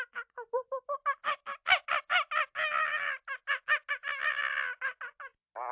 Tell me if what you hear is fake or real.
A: real